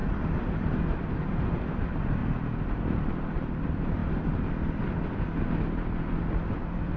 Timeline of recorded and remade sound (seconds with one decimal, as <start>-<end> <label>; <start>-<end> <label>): 0.0-0.6 recorded; 0.6-2.2 remade; 2.2-2.8 recorded; 2.8-4.0 remade; 4.0-6.5 recorded; 6.5-7.0 remade